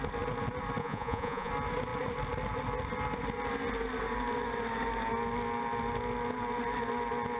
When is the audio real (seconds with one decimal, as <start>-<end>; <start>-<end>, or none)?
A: 0.0-0.8; 1.5-7.4